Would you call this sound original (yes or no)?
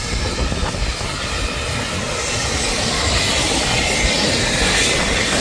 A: yes